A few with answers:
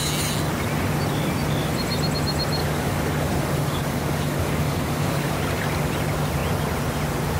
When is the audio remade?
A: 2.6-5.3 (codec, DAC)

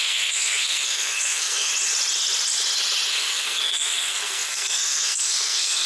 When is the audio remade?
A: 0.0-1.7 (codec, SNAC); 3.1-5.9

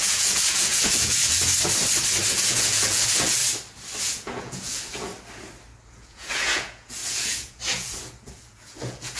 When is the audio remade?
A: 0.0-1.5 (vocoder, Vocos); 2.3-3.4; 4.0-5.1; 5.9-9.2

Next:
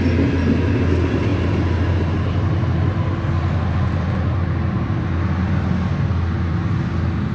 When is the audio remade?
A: none